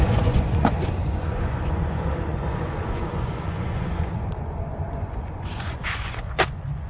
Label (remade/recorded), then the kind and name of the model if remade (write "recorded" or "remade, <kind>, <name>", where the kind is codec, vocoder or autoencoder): remade, vocoder, Vocos